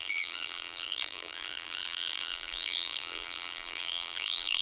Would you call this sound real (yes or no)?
no